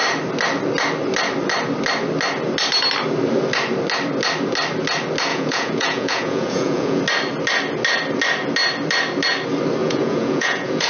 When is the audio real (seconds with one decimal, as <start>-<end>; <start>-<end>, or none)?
0.0-5.3; 7.0-9.8